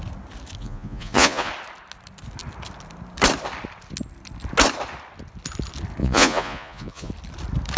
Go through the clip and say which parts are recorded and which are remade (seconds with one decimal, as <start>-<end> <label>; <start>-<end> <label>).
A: 0.0-0.6 recorded; 0.6-1.5 remade; 1.5-6.0 recorded; 6.0-7.1 remade; 7.1-7.8 recorded